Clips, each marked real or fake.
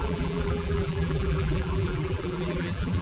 fake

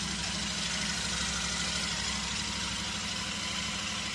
real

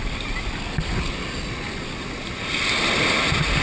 real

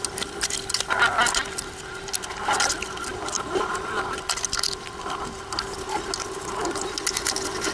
real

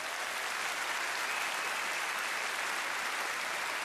real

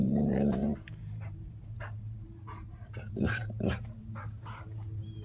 fake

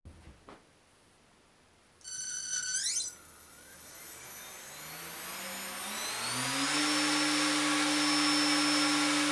real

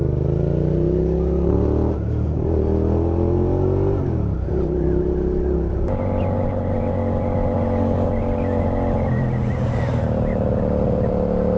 real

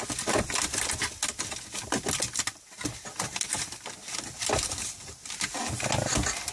real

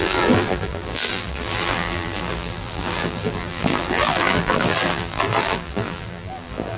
fake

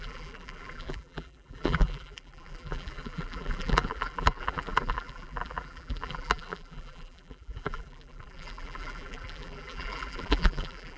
fake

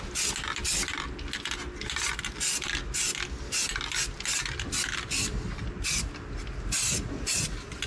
real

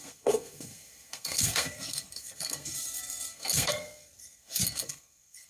fake